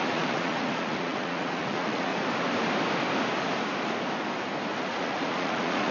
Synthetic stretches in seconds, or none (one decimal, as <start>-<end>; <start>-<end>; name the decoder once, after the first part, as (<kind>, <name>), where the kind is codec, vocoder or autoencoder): 0.0-2.1 (vocoder, Vocos); 4.8-5.9